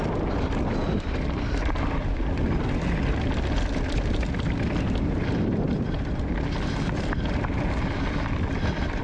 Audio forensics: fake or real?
real